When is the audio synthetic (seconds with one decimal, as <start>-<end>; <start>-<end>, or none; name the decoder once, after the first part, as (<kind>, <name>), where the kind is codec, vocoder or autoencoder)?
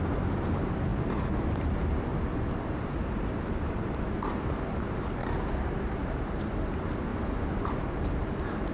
0.0-2.1 (vocoder, BigVGAN v2); 2.6-5.2; 6.0-7.1; 7.7-8.7